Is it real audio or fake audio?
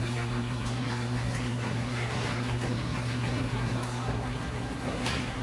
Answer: fake